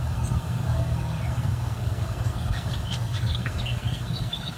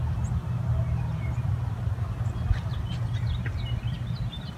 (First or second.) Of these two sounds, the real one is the second